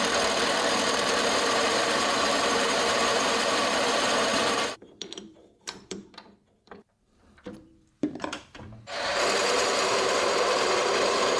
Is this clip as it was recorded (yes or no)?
no